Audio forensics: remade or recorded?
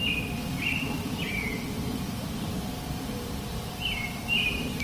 remade